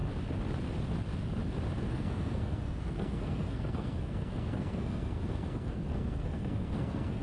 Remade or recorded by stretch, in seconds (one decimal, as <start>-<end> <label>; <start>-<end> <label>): 0.0-1.9 recorded; 1.9-7.2 remade